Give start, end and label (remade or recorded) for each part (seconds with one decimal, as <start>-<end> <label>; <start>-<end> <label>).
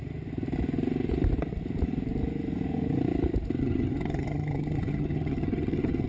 0.0-3.6 recorded; 3.6-6.1 remade